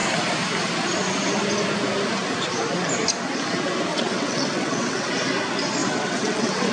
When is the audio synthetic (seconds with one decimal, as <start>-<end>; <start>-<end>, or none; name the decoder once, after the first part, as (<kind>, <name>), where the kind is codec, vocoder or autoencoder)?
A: 3.9-5.1 (vocoder, WaveNeXt); 5.8-6.7